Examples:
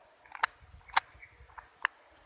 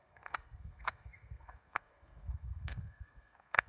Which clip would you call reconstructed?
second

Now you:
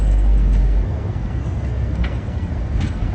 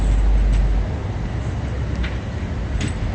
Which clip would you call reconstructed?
first